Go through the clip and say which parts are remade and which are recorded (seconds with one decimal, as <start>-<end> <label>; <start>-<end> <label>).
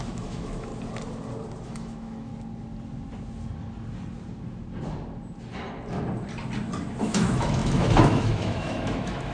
0.0-0.7 remade; 0.7-1.6 recorded; 1.6-2.3 remade; 2.3-7.0 recorded; 7.0-9.3 remade